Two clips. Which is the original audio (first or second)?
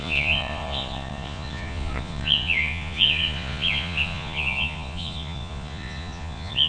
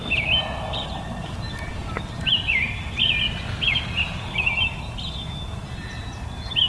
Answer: second